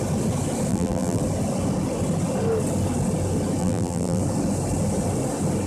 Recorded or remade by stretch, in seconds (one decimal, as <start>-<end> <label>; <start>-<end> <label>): 0.0-0.7 recorded; 0.7-1.2 remade; 1.2-3.6 recorded; 3.6-4.2 remade; 4.2-5.7 recorded